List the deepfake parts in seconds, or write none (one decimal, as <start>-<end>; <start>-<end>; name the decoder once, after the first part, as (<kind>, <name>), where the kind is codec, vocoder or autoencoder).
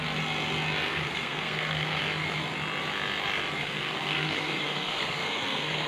0.9-2.0 (codec, SNAC); 3.6-5.9